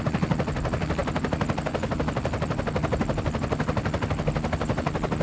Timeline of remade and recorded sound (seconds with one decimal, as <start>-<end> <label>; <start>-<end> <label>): 0.0-5.2 recorded